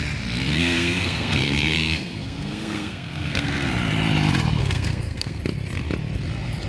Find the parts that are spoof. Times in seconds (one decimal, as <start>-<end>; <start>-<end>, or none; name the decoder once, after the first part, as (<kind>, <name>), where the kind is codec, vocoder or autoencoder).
0.5-3.7 (codec, SNAC); 4.6-5.4